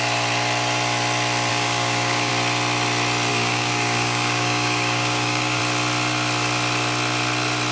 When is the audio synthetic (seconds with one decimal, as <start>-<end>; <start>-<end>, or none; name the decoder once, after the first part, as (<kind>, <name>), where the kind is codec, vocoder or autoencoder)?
1.5-2.3 (codec, DAC); 3.3-5.6